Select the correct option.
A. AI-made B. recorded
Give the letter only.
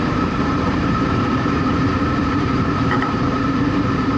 A